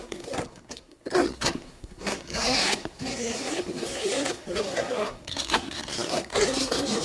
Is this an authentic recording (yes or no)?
no